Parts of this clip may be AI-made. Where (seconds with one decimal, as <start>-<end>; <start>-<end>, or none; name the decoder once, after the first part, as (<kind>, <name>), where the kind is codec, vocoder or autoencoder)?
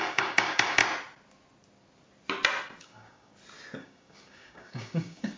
0.0-0.8 (codec, DAC); 2.8-3.3; 3.8-5.4